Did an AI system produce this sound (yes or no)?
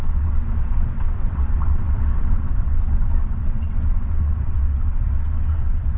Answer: yes